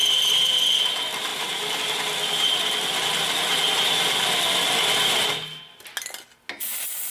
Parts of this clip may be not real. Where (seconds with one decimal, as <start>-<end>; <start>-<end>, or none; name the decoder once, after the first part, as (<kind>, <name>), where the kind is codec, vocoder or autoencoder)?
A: none